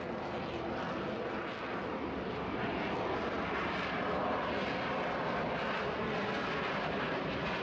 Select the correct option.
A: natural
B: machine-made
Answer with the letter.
A